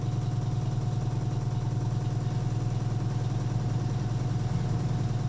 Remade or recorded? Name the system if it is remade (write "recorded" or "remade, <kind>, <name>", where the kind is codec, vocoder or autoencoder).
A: recorded